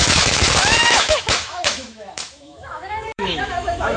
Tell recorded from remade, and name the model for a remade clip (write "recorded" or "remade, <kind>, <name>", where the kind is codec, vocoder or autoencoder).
remade, autoencoder, DAC-VAE